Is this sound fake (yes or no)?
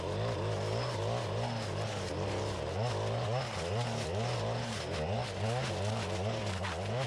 no